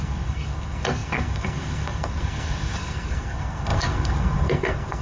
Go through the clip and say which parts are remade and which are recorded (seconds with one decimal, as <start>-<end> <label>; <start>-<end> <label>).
0.0-5.0 remade

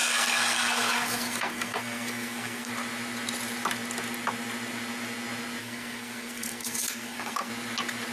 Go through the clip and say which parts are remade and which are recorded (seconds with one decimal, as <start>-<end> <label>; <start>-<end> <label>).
0.0-2.7 remade; 2.7-5.6 recorded; 5.6-7.5 remade; 7.5-8.1 recorded